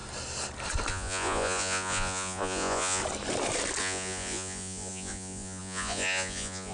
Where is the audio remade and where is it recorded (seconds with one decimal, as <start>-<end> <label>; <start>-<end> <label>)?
0.0-0.9 recorded; 0.9-3.0 remade; 3.0-3.8 recorded; 3.8-6.7 remade